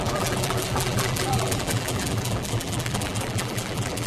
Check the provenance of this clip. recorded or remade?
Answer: remade